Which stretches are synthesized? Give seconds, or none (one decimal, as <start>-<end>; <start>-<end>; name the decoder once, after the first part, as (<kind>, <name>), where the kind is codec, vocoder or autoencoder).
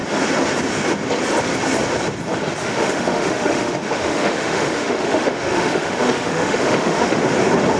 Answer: 2.6-7.2 (autoencoder, DAC-VAE)